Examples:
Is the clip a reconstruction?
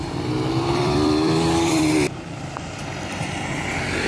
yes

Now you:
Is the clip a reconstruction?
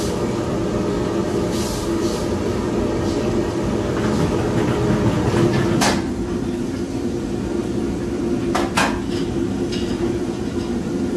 no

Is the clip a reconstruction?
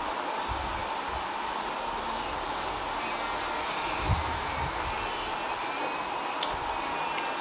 no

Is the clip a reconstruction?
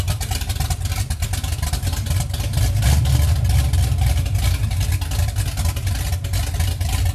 no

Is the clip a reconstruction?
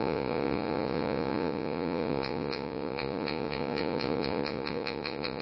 yes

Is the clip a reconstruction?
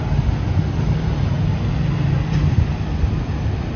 no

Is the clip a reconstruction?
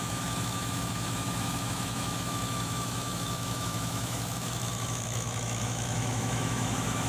yes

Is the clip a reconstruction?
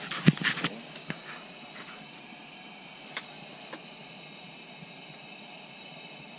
no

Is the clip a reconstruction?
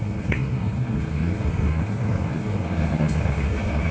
yes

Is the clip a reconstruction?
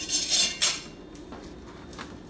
no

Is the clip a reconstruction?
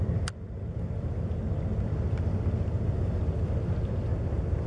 no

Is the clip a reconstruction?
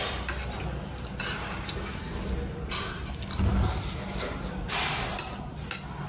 no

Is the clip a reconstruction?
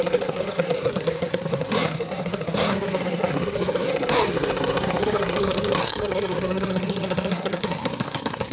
yes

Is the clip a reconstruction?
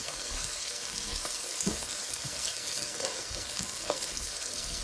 yes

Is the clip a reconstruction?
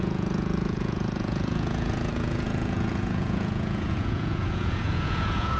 yes